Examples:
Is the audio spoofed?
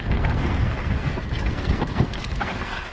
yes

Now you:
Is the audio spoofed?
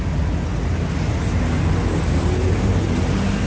no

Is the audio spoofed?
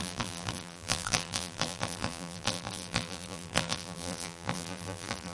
yes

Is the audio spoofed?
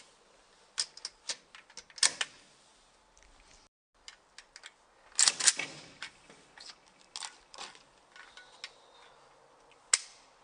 no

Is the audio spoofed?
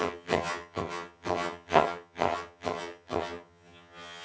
yes